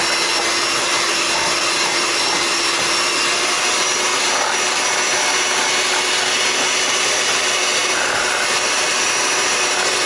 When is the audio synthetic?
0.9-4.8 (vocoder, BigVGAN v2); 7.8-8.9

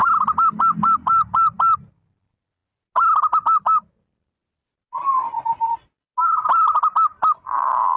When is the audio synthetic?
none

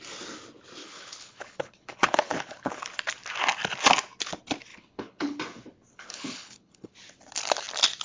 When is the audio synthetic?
0.8-2.8 (codec, HILCodec); 4.7-5.4; 5.9-6.9

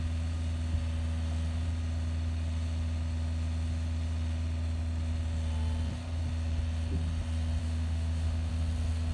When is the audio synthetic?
7.6-8.5 (autoencoder, DAC-VAE)

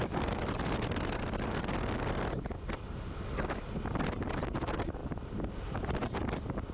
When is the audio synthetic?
none

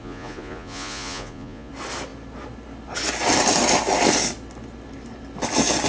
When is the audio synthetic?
0.0-1.7 (vocoder, Vocos)